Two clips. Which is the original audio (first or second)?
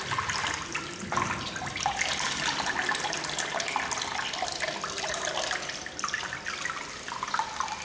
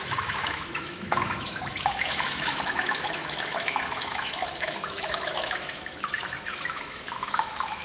first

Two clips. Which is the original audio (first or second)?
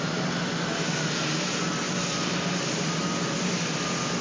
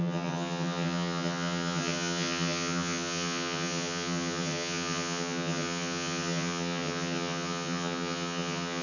first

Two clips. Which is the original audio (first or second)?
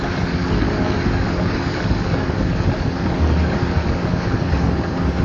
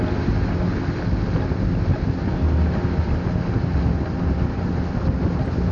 second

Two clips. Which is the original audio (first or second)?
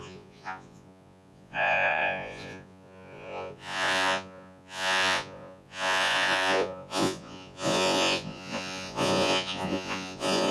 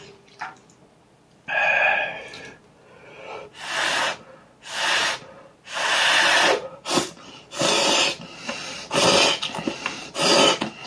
second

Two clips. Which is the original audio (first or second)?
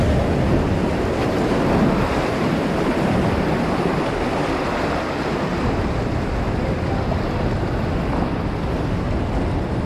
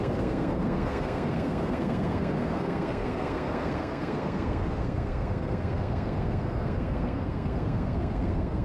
first